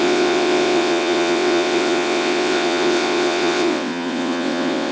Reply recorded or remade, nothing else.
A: remade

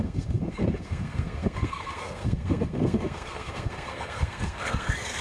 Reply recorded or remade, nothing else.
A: remade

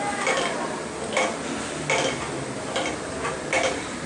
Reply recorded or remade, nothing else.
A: recorded